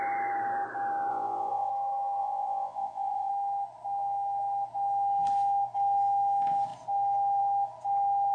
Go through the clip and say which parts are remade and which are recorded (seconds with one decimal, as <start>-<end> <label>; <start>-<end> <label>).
0.0-1.1 recorded; 1.1-1.7 remade; 1.7-2.2 recorded; 2.2-3.3 remade; 3.3-8.3 recorded